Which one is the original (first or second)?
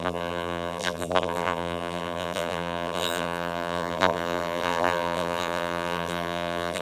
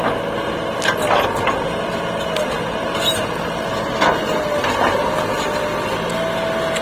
second